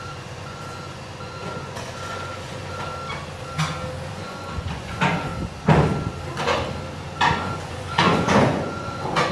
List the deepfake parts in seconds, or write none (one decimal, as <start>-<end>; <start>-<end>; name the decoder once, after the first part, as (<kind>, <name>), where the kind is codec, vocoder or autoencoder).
0.0-2.9 (vocoder, Vocos); 4.1-5.3; 7.4-9.3